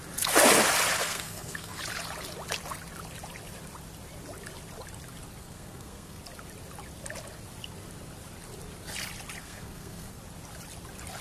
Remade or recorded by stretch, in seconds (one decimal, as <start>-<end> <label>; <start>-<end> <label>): 0.0-1.0 recorded; 1.0-1.8 remade; 1.8-5.4 recorded; 5.4-6.2 remade; 6.2-9.4 recorded; 9.4-10.2 remade; 10.2-11.2 recorded